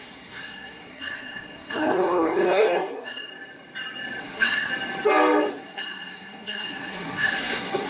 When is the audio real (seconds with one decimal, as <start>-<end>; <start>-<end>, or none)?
3.3-4.2; 4.7-5.5